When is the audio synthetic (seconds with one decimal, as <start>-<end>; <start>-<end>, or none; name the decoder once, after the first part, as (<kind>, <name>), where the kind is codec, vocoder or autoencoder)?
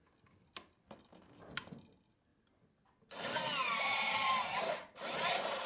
none